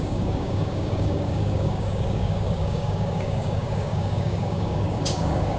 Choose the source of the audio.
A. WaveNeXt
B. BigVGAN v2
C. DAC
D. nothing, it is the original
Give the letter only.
C